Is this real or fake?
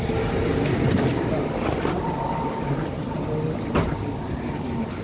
real